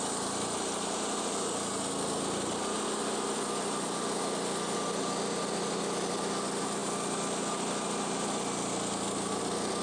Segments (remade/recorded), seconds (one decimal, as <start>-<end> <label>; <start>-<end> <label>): 0.0-9.8 recorded